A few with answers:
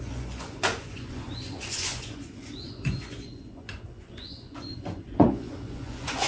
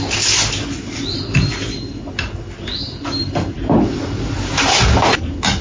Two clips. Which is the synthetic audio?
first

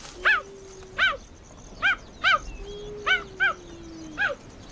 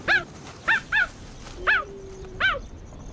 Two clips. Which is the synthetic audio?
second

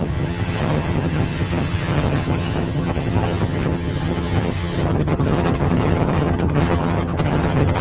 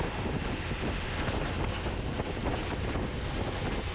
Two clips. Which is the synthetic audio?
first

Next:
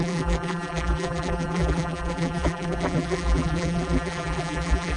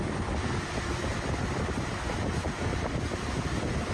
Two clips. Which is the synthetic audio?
first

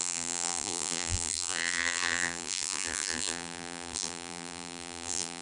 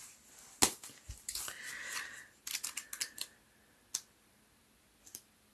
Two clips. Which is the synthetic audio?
first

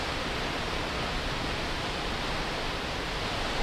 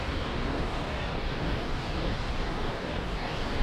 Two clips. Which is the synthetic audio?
second